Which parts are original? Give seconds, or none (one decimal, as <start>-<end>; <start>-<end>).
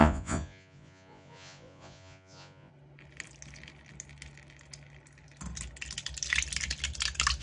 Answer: 2.7-7.4